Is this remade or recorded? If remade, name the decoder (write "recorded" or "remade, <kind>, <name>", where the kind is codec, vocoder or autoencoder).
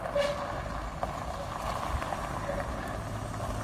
recorded